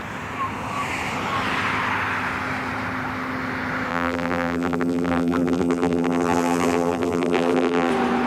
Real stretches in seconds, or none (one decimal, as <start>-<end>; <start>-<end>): 0.0-3.9; 7.9-8.3